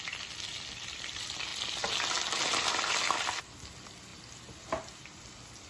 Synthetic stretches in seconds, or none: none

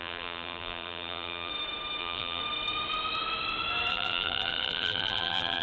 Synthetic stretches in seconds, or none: 0.0-1.5; 2.0-2.4; 3.9-5.6

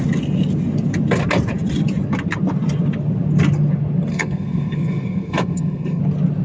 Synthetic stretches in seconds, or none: 4.1-6.0

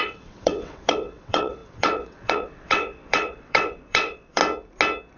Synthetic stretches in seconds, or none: 0.0-4.4

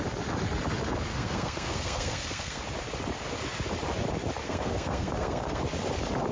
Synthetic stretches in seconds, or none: 1.1-2.6; 4.4-5.6

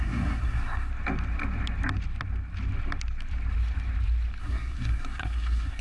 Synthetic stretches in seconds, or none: 0.0-0.9; 4.4-5.8

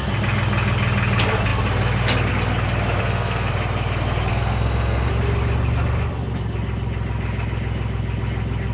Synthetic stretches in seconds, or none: 3.0-3.5; 4.3-5.1